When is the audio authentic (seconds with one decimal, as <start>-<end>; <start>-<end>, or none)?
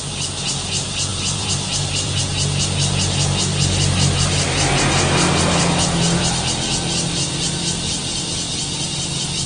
0.0-1.1; 2.2-3.5; 6.2-9.5